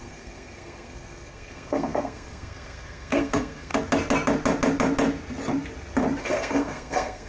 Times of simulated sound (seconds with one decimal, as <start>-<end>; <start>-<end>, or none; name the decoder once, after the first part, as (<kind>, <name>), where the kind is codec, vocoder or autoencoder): 0.0-3.7 (codec, SNAC); 6.2-7.3